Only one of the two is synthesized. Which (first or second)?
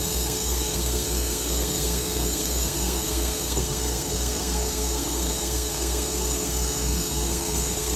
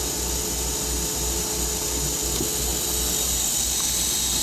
first